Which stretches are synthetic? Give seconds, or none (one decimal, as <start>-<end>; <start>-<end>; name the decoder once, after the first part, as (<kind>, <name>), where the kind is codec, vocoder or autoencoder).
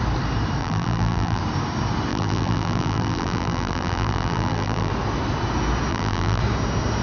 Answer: 0.6-1.4 (vocoder, BigVGAN v2); 2.1-4.9; 5.9-6.4